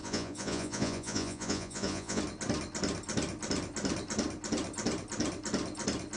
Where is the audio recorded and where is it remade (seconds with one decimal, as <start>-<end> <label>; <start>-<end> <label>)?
0.0-2.2 remade; 2.2-6.2 recorded